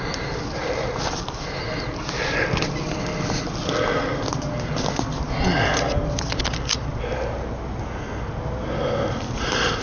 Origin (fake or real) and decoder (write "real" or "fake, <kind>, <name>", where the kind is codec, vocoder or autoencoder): real